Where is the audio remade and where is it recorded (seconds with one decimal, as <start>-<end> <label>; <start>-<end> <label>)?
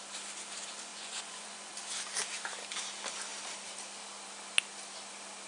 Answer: 0.0-0.9 recorded; 0.9-1.7 remade; 1.7-5.5 recorded